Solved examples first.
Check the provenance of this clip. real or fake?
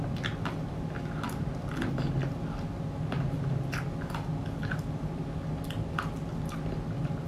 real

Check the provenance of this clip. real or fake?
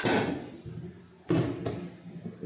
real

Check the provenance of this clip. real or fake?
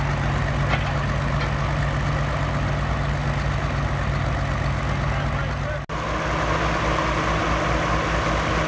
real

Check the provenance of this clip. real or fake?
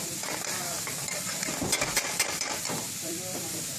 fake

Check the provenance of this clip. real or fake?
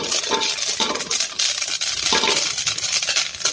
real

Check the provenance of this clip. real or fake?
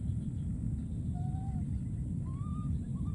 real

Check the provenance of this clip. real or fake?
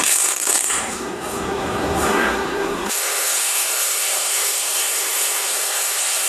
fake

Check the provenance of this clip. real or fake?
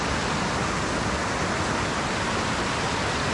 real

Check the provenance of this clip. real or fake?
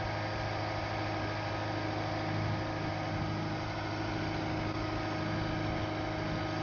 real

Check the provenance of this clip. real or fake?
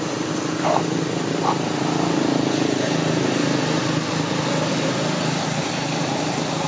real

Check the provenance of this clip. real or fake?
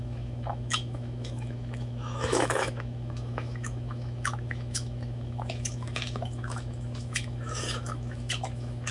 fake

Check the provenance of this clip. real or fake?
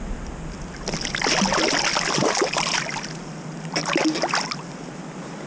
real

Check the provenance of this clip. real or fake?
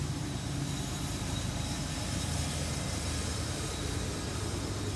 fake